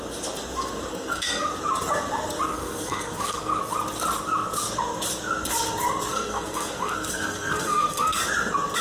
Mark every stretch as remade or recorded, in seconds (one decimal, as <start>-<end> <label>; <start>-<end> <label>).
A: 0.0-0.9 recorded; 0.9-1.5 remade; 1.5-2.5 recorded; 2.5-3.6 remade; 3.6-6.1 recorded; 6.1-8.2 remade; 8.2-8.8 recorded